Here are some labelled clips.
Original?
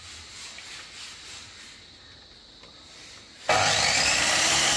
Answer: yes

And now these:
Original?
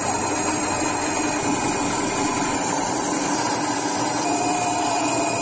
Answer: yes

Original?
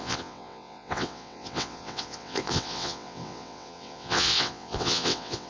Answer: no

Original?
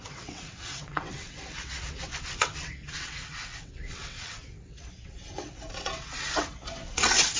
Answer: no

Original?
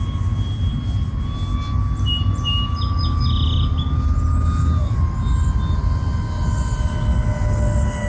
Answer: yes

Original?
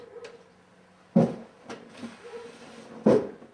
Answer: yes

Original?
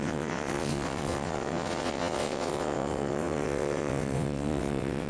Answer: no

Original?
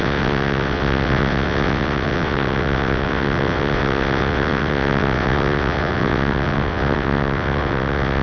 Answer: no